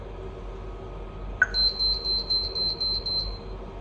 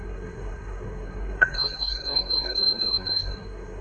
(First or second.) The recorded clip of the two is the first